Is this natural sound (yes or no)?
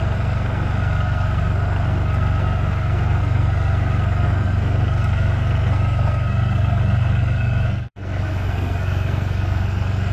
no